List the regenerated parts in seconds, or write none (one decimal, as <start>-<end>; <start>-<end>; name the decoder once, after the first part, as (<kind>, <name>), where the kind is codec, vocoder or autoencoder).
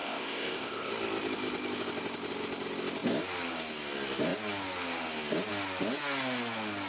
0.0-0.9 (codec, ZipCodec)